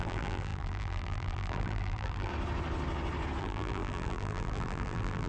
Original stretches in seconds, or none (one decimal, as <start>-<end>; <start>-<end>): 2.3-3.4